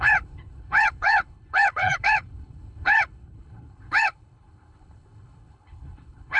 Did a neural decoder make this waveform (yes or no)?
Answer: yes